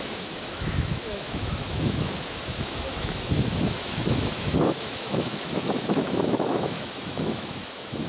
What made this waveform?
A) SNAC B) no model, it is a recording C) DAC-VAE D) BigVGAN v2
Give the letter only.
C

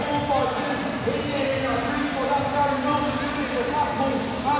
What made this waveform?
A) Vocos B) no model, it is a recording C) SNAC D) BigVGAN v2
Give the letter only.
B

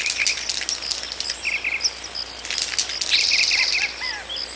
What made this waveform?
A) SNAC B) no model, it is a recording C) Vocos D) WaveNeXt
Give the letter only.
B